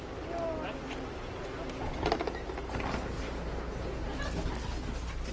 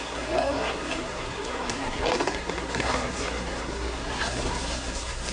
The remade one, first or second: second